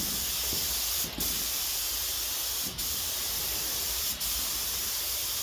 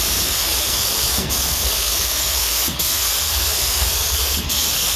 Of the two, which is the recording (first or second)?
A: first